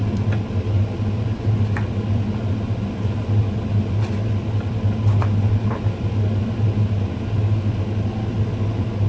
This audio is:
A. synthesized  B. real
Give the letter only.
B